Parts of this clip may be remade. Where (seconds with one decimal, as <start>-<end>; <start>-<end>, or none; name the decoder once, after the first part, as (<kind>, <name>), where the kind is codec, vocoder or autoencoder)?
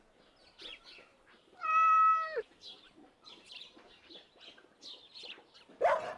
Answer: 1.1-4.1 (vocoder, BigVGAN v2)